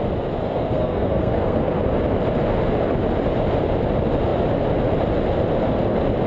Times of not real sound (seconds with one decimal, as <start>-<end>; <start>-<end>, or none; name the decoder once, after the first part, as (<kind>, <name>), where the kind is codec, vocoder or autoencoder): 0.4-1.8 (codec, SNAC)